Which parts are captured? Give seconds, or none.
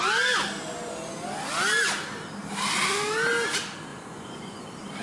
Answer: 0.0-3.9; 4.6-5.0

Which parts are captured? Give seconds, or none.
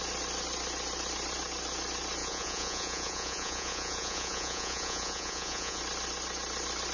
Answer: 0.0-2.2; 5.8-6.9